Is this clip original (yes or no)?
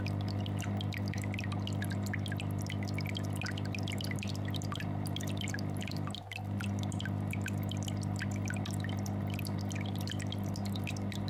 yes